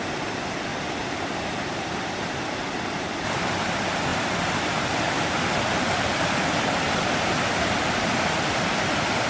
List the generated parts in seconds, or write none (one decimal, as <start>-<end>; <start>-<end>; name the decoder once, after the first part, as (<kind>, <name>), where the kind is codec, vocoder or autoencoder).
0.7-3.2 (vocoder, BigVGAN v2); 4.1-5.5